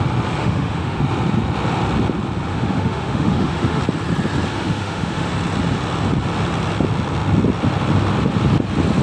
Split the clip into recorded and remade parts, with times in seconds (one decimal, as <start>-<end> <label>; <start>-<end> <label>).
0.0-0.4 recorded; 0.4-1.0 remade; 1.0-2.5 recorded; 2.5-3.8 remade; 3.8-4.5 recorded; 4.5-5.3 remade; 5.3-9.0 recorded